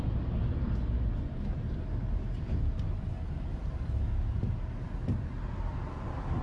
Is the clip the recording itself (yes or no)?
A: yes